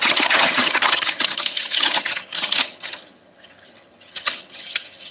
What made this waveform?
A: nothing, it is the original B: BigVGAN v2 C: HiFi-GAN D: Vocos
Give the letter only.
C